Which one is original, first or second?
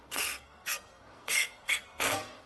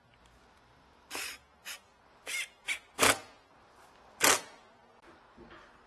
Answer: second